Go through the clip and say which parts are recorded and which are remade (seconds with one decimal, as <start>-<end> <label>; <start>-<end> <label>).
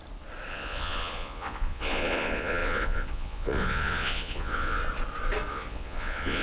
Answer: 0.0-0.5 recorded; 0.5-4.8 remade; 4.8-5.5 recorded; 5.5-6.4 remade